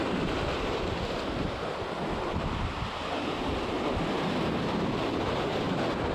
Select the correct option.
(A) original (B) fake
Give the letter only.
A